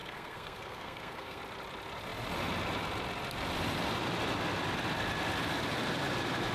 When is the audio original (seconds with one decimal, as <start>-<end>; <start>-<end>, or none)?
1.4-6.5